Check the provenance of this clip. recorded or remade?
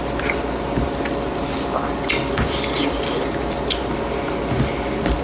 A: recorded